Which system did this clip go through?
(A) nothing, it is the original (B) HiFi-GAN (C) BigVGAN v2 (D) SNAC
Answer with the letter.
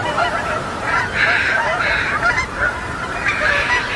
C